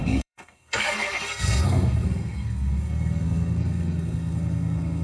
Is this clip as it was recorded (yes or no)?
no